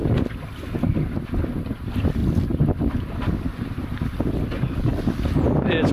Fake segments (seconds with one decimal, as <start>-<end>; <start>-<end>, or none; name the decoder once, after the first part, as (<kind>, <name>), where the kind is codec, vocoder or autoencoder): none